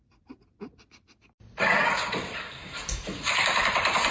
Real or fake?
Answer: real